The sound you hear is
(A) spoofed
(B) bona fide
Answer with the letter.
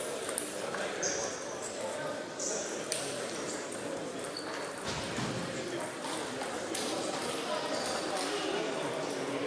B